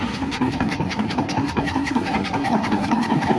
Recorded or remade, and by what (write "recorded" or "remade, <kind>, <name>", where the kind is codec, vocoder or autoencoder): remade, codec, SNAC